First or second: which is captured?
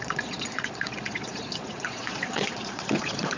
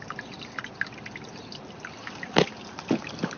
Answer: second